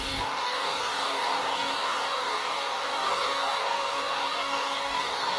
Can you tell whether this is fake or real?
fake